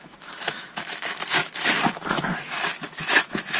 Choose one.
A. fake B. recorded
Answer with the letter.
A